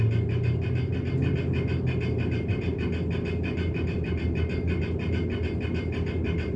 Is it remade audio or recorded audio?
recorded